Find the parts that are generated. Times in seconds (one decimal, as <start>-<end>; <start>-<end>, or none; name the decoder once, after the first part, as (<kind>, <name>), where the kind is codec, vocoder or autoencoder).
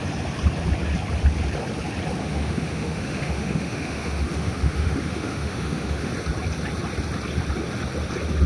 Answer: 2.2-6.1 (autoencoder, DAC-VAE)